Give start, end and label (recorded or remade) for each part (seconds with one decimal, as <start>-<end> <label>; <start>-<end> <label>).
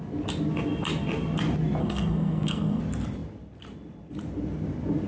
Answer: 0.0-1.8 recorded; 1.8-2.8 remade; 2.8-5.1 recorded